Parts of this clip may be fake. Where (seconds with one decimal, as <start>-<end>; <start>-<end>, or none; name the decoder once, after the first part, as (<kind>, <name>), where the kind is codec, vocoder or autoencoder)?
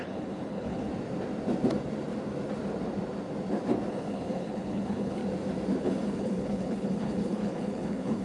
0.0-0.9 (codec, HILCodec); 3.9-5.2; 5.8-8.2